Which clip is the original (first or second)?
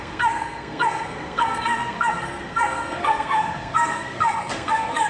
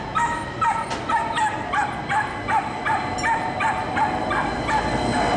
second